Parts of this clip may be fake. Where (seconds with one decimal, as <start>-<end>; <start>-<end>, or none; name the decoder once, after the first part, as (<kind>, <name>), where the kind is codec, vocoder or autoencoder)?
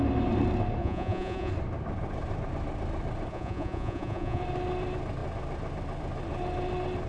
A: 0.8-1.5 (vocoder, Vocos); 3.3-4.4